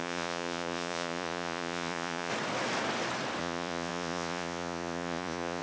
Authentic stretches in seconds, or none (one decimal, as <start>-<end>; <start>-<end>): 2.3-3.4